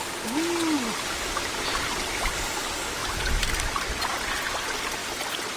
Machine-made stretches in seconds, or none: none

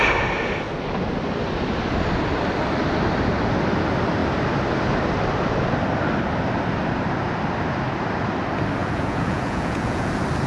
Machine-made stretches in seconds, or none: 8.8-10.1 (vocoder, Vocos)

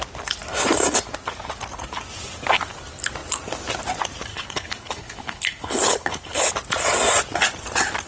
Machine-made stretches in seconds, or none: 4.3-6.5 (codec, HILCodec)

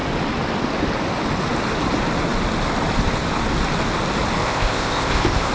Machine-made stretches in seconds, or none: 4.4-5.5 (codec, ZipCodec)

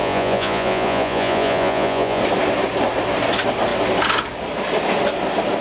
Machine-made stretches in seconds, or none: 0.0-2.2 (vocoder, Vocos)

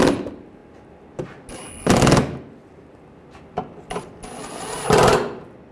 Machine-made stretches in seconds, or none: none

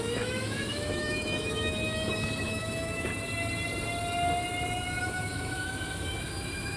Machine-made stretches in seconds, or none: 0.0-3.1 (autoencoder, DAC-VAE); 5.0-6.8

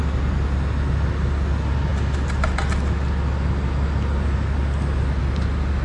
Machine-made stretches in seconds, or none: none